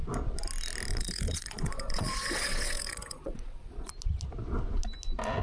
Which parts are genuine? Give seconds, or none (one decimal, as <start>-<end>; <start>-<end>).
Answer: 0.0-0.9; 3.9-5.4